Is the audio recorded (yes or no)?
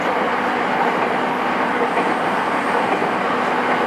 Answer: yes